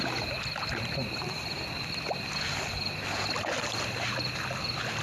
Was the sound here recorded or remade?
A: recorded